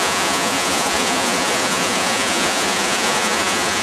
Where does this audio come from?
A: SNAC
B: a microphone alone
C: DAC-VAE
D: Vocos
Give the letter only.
D